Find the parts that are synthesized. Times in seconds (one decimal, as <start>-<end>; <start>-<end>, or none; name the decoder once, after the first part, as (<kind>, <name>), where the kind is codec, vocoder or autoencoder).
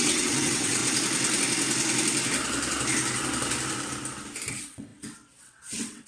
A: 0.0-0.8 (vocoder, WaveNeXt); 4.5-6.1